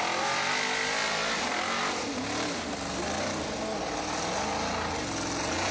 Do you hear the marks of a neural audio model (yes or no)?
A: no